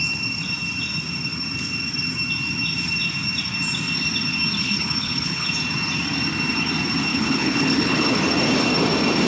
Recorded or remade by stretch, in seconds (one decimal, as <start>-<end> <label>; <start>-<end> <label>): 0.0-4.6 recorded; 4.6-5.5 remade; 5.5-7.1 recorded; 7.1-8.2 remade; 8.2-9.3 recorded